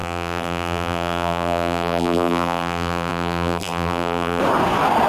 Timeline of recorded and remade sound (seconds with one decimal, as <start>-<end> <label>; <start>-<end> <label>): 0.0-4.4 remade; 4.4-5.1 recorded